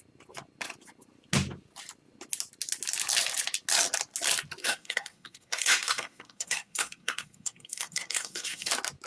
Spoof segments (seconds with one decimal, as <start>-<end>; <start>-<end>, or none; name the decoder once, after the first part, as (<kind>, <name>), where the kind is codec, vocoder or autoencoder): 4.6-8.7 (codec, SNAC)